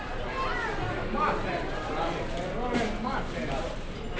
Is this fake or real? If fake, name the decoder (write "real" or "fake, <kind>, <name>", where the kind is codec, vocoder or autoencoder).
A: real